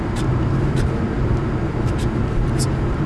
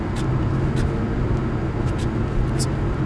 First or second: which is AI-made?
first